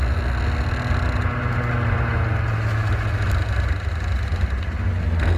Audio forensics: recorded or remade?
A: recorded